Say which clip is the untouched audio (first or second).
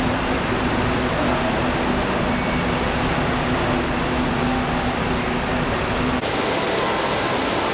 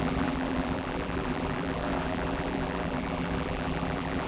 first